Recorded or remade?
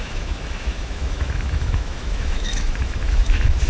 remade